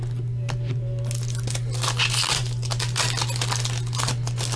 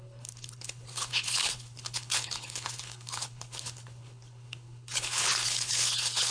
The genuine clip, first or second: first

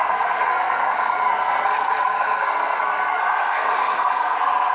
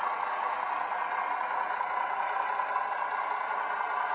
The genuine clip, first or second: second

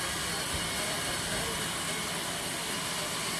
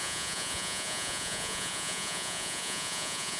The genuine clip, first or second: first